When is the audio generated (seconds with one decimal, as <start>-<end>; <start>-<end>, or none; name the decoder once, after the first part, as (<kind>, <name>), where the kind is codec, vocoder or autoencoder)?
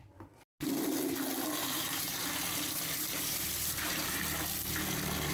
1.6-4.2 (vocoder, BigVGAN v2)